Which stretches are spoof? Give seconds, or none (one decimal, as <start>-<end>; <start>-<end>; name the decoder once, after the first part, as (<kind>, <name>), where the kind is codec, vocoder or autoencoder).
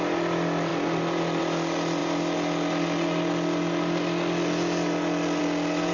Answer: none